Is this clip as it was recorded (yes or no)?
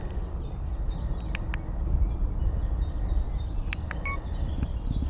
yes